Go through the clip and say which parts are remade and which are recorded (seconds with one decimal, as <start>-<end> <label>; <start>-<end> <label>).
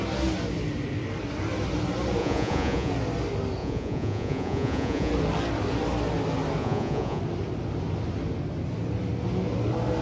0.0-2.2 recorded; 2.2-2.9 remade; 2.9-3.6 recorded; 3.6-5.1 remade; 5.1-6.6 recorded; 6.6-7.2 remade; 7.2-10.0 recorded